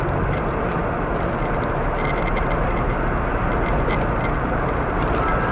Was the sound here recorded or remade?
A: recorded